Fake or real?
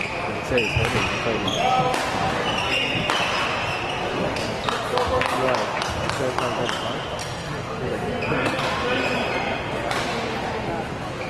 real